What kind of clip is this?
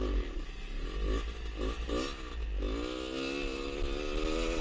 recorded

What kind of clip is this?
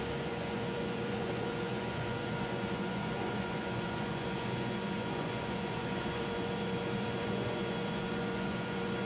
remade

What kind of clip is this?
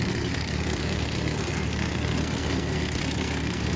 remade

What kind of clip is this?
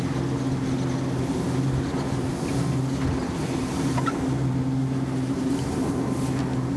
recorded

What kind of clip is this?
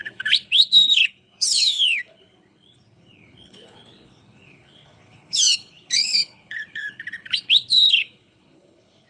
remade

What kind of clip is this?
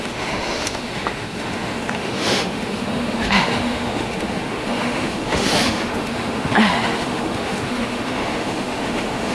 remade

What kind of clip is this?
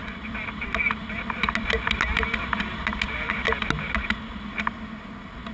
recorded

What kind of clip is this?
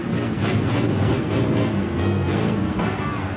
remade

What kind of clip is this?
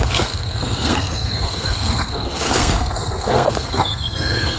remade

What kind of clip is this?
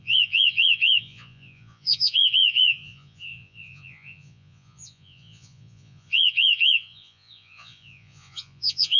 remade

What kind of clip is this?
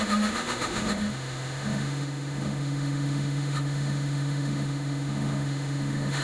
remade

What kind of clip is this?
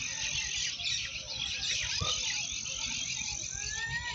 recorded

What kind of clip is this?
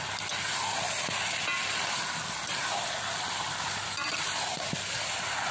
recorded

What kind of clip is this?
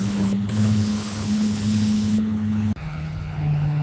remade